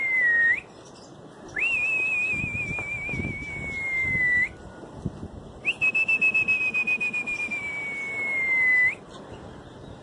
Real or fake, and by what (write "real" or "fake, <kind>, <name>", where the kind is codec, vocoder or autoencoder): real